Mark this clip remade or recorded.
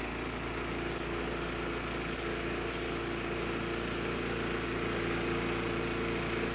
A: recorded